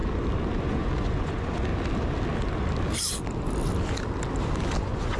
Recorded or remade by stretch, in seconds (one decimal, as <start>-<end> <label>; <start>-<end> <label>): 0.0-0.6 recorded; 0.6-1.7 remade; 1.7-4.8 recorded; 4.8-5.2 remade